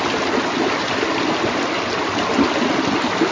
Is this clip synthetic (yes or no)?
no